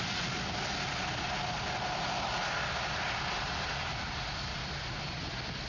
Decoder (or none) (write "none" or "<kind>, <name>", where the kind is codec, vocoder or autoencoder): none